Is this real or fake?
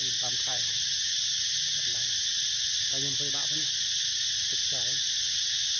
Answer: real